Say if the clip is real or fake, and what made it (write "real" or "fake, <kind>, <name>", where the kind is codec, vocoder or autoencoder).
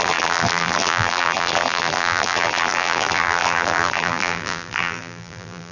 fake, vocoder, BigVGAN v2